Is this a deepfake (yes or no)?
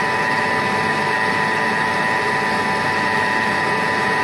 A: no